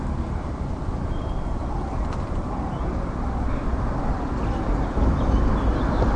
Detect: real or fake fake